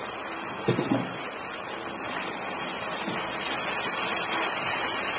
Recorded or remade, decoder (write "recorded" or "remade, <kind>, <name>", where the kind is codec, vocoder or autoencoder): recorded